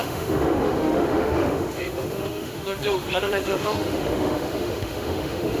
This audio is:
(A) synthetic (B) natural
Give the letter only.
A